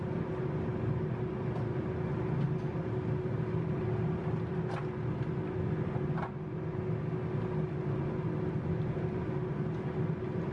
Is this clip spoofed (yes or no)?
no